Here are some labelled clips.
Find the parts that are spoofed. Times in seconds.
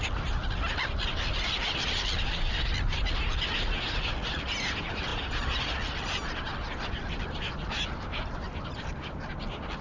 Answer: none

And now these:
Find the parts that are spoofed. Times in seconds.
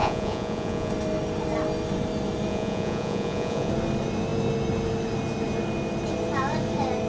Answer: 0.0-0.9; 2.5-3.7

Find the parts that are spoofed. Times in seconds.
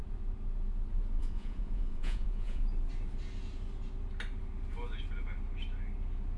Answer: 1.2-2.6